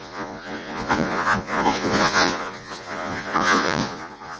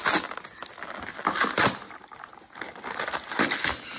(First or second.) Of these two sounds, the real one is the second